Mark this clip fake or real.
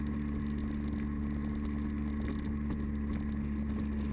real